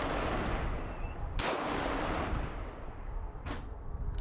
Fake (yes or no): no